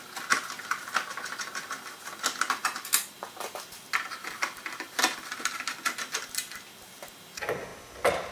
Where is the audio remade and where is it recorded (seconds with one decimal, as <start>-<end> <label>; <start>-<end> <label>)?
0.0-8.3 recorded